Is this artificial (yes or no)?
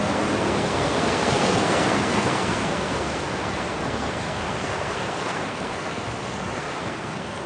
yes